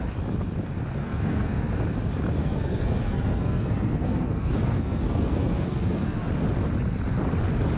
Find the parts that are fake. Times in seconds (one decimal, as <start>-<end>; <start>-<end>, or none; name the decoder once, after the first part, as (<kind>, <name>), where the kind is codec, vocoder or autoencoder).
1.0-1.7 (codec, SNAC); 2.4-6.3